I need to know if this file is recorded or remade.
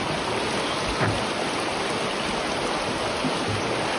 recorded